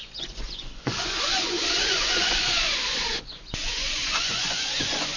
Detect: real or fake fake